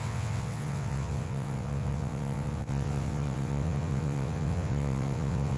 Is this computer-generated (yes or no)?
yes